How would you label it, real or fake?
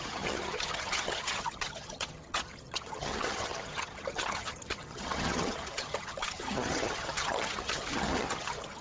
fake